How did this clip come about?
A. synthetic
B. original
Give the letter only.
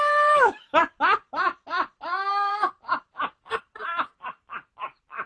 A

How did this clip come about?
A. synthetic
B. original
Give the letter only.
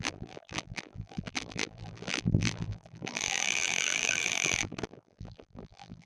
A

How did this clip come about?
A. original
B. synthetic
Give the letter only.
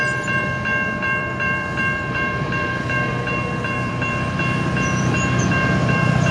B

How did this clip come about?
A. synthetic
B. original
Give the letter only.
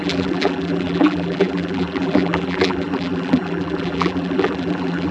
A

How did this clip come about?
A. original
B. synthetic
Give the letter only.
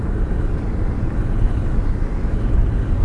B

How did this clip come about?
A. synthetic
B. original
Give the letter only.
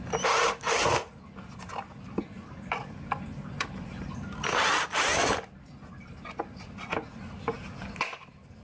B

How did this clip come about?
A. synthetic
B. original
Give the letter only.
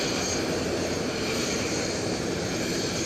A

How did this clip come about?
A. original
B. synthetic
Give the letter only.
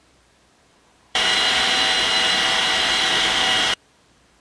B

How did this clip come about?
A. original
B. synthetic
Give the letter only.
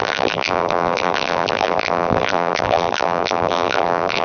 B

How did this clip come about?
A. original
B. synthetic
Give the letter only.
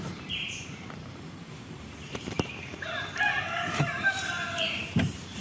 B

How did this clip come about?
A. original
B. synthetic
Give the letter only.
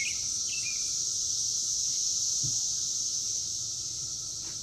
A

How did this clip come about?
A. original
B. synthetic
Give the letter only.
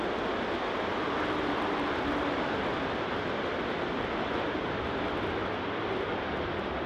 B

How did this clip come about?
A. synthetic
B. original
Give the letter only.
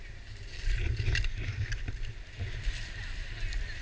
B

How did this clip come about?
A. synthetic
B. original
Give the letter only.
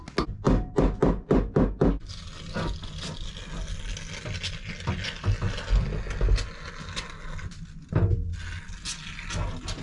B